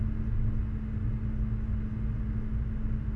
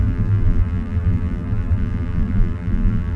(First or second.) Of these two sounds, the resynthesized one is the second